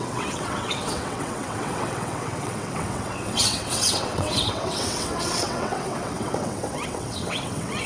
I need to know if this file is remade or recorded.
remade